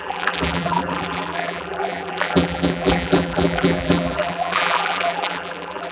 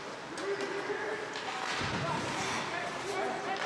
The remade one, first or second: first